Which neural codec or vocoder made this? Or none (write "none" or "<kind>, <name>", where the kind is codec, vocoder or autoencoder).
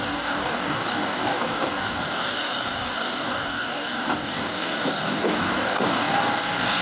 codec, DAC